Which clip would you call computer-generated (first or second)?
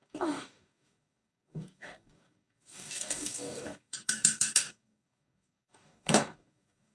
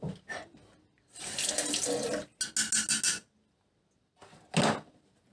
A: first